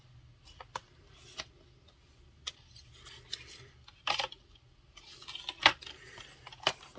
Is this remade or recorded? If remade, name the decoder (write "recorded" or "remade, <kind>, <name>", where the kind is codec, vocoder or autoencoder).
recorded